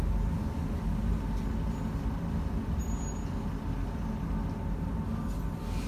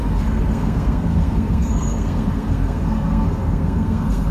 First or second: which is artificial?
second